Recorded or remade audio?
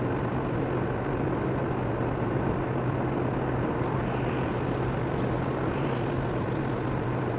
recorded